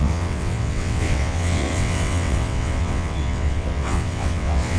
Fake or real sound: fake